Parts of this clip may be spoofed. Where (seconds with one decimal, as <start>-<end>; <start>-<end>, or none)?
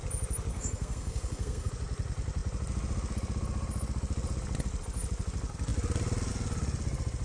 0.5-1.7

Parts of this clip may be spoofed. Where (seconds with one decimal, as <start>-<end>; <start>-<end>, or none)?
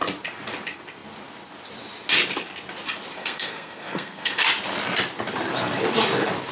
3.2-4.4